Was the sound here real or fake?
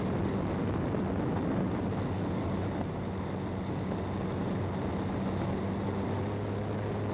real